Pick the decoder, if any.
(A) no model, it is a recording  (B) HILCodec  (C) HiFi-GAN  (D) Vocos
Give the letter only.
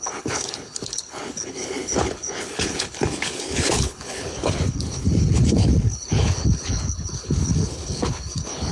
B